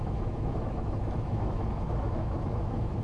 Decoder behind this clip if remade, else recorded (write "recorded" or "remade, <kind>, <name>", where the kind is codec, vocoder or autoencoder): remade, autoencoder, DAC-VAE